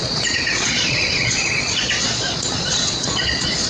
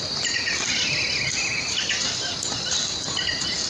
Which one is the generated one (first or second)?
first